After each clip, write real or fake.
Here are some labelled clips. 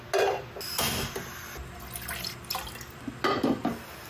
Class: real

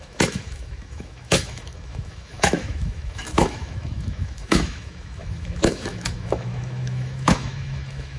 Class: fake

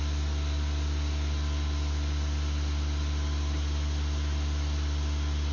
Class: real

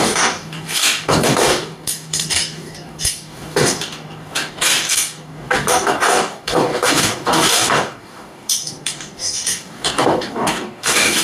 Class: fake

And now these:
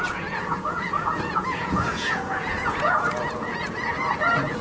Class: fake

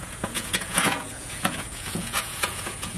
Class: fake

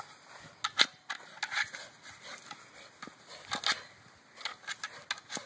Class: real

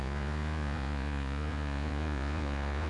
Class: fake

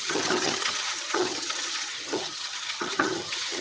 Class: fake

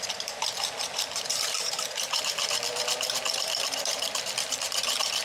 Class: fake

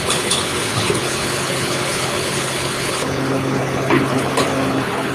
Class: fake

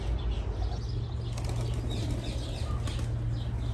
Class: real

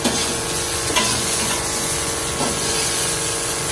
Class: fake